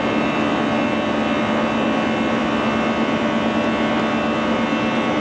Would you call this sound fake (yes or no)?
no